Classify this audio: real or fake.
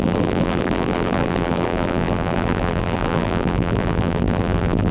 fake